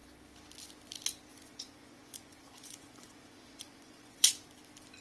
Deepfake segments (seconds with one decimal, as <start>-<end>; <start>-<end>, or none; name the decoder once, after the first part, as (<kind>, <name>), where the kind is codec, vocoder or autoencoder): 1.3-4.3 (vocoder, Vocos)